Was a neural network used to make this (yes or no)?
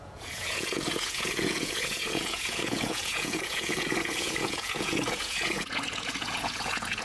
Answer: yes